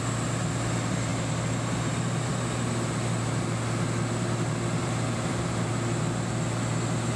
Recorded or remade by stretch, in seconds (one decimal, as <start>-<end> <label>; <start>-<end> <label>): 0.0-4.8 recorded; 4.8-5.7 remade; 5.7-7.2 recorded